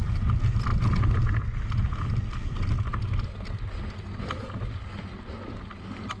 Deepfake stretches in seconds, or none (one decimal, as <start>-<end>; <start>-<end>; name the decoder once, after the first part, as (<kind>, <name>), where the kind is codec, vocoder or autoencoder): none